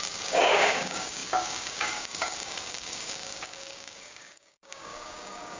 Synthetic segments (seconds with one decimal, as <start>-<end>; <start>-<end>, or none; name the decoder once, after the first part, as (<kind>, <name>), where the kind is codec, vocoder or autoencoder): 0.0-5.6 (codec, DAC)